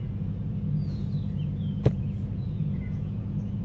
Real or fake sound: fake